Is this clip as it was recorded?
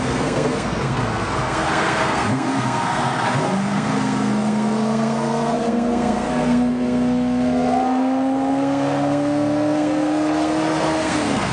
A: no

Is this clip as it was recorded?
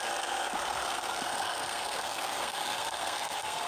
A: no